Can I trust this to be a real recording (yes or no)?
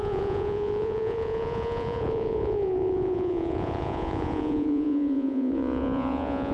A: no